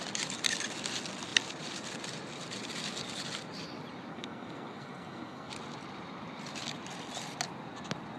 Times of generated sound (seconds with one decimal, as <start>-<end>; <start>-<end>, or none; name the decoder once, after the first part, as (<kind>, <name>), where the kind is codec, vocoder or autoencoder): 4.1-5.5 (codec, SNAC)